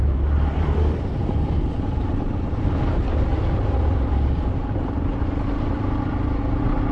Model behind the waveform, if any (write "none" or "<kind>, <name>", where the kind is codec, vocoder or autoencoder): none